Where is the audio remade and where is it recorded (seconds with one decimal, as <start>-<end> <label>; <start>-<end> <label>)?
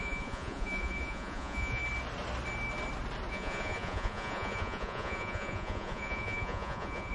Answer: 0.0-1.8 remade; 1.8-3.3 recorded; 3.3-7.1 remade